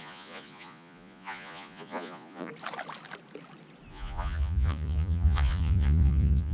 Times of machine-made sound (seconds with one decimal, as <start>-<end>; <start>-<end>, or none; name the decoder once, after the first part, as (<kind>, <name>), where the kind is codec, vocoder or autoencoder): 0.0-2.5 (vocoder, Vocos); 3.9-6.5